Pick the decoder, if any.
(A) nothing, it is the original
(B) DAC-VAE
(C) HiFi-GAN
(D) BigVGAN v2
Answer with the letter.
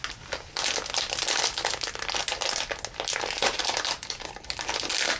A